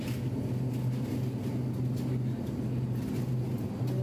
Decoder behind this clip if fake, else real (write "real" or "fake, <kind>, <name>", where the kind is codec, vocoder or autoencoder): real